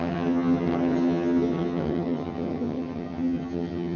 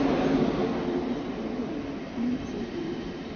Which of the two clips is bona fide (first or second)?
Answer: second